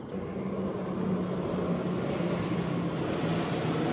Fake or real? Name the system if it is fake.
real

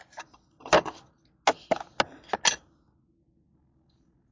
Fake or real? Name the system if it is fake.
real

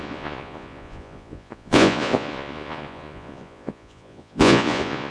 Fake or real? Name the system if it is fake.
fake, vocoder, Vocos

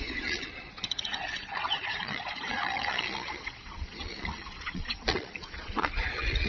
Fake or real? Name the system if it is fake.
fake, vocoder, Vocos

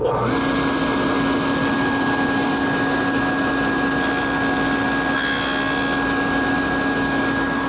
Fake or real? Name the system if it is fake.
real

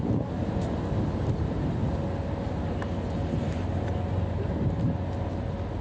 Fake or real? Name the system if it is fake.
real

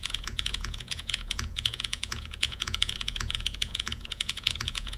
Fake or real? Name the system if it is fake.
fake, vocoder, Vocos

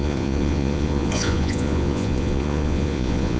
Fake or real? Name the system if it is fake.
fake, vocoder, Vocos